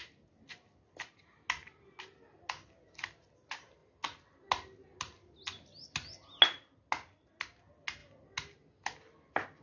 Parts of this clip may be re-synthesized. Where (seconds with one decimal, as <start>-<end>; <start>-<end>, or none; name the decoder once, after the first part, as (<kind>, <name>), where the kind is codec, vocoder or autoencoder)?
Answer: none